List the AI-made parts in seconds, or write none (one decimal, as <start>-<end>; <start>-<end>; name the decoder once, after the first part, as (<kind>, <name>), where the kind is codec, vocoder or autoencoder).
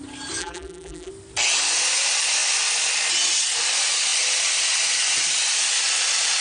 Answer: 0.4-1.1 (vocoder, BigVGAN v2)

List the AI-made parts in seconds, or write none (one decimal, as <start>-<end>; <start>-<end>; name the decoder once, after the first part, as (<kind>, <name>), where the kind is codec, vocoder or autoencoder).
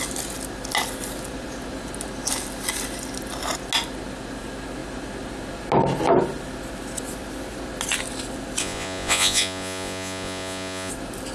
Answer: 8.6-10.9 (vocoder, Vocos)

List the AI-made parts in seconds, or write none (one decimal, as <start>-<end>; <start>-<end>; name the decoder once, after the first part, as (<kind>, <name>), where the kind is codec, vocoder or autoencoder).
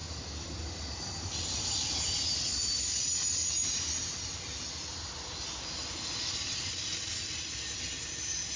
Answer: none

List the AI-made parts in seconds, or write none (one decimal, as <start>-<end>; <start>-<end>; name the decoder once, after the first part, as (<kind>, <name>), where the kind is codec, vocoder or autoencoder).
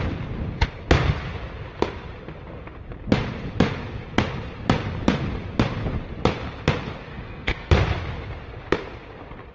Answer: 7.1-7.7 (codec, SNAC)